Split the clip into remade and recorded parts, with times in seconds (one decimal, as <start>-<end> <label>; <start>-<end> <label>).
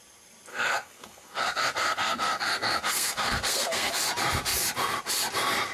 0.0-0.5 recorded; 0.5-3.9 remade; 3.9-5.7 recorded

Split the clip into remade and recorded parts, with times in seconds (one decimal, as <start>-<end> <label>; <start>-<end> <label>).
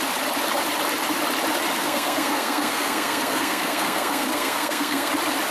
0.0-1.8 recorded; 1.8-5.1 remade; 5.1-5.5 recorded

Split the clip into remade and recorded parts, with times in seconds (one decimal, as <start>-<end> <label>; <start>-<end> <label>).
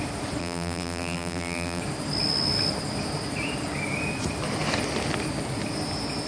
0.0-0.4 recorded; 0.4-1.8 remade; 1.8-6.3 recorded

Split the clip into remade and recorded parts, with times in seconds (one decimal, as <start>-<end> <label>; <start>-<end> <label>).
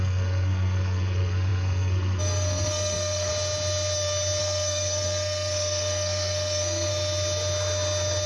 0.0-3.3 remade; 3.3-4.4 recorded; 4.4-6.9 remade; 6.9-8.3 recorded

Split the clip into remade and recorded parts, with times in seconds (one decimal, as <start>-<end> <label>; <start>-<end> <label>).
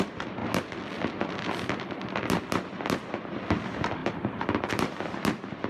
0.0-5.7 recorded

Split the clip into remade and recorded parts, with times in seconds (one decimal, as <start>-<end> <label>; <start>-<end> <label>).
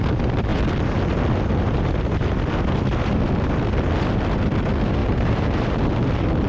0.0-5.0 recorded; 5.0-5.8 remade; 5.8-6.5 recorded